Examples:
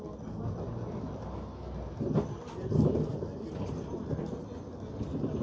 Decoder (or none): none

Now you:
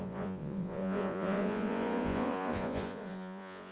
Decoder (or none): vocoder, Vocos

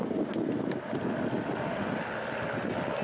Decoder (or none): none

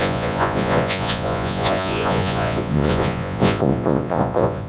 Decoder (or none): vocoder, Vocos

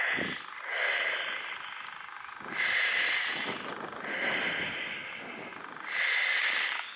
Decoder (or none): none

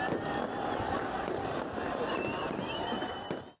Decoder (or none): none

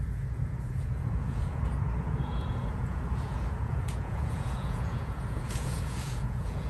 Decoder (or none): vocoder, Vocos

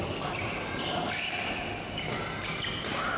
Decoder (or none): none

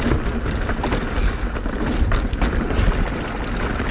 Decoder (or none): none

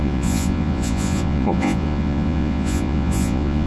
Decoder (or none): vocoder, Vocos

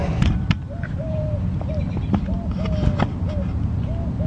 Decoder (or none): none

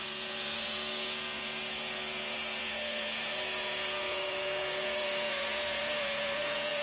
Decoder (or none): vocoder, Vocos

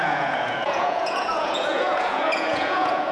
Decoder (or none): vocoder, Vocos